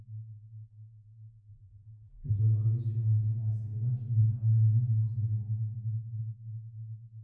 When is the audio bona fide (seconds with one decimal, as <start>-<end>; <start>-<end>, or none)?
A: 0.0-1.5; 2.4-7.2